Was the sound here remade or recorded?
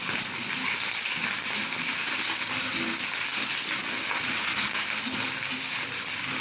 recorded